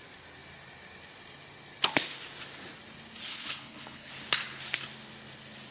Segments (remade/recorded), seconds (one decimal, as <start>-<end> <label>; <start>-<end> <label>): 0.0-3.3 recorded; 3.3-4.1 remade; 4.1-5.7 recorded